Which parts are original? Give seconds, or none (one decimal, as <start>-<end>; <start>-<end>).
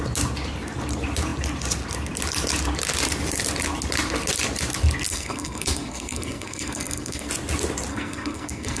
0.0-5.1; 7.3-7.9